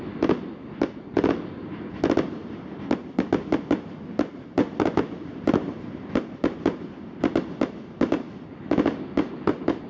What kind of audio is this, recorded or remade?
recorded